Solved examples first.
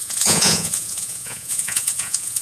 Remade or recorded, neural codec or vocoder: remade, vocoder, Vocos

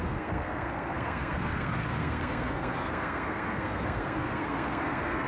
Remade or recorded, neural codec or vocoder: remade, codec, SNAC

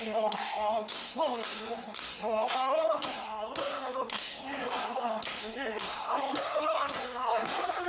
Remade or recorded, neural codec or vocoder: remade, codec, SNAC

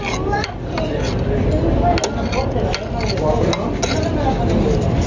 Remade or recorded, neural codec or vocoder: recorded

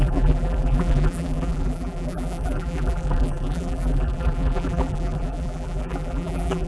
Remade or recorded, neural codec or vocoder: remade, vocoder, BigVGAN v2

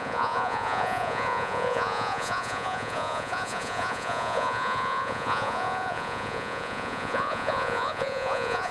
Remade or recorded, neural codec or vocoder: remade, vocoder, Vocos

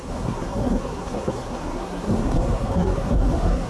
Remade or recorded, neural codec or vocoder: remade, codec, SNAC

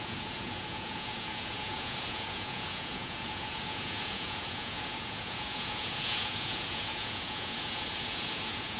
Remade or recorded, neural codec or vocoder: remade, vocoder, Vocos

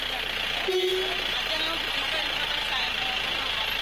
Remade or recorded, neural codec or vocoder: recorded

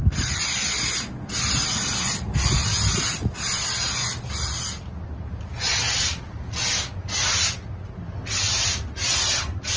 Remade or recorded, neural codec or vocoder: recorded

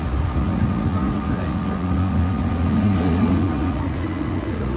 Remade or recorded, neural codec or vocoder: remade, vocoder, Vocos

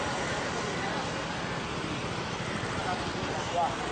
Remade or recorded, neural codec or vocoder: recorded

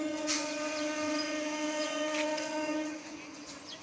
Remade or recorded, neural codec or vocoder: remade, vocoder, Vocos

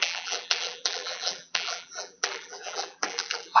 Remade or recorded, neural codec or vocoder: remade, vocoder, BigVGAN v2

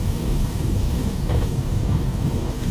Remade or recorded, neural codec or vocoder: remade, codec, DAC